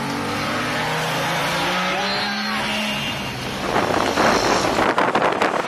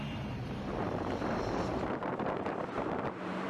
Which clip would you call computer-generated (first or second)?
second